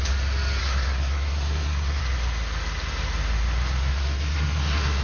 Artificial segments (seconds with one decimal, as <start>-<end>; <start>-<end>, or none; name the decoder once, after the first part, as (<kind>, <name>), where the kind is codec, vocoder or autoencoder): 0.6-2.0 (codec, SNAC); 3.9-5.0

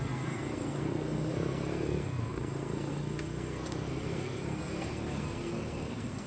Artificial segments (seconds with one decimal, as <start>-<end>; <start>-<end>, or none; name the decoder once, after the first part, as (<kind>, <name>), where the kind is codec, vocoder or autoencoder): 0.0-6.3 (codec, SNAC)

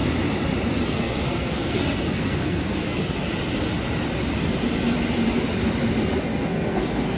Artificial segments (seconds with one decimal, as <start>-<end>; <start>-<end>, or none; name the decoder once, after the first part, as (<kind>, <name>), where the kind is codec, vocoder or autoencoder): 0.9-3.0 (codec, SNAC); 6.2-7.2

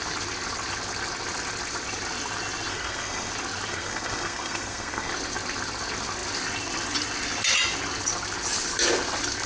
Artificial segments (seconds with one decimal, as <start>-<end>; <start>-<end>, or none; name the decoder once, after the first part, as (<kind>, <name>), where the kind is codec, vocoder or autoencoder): 2.7-3.3 (codec, SNAC); 3.7-5.1

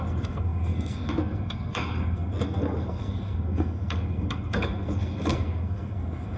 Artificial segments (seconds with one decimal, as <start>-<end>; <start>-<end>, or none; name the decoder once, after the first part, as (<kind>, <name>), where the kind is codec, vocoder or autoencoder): 0.0-6.4 (codec, SNAC)

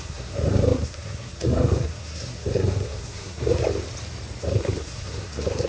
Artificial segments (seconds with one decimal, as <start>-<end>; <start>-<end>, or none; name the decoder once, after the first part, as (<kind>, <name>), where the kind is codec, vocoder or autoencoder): 0.0-3.6 (codec, SNAC); 4.4-5.7

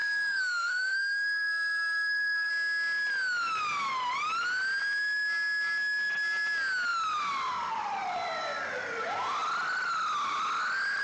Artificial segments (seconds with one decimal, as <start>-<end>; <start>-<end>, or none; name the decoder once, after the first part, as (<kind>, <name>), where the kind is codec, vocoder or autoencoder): 0.0-2.5 (codec, SNAC)